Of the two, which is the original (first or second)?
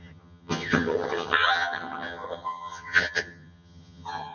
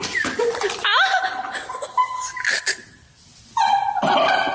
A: second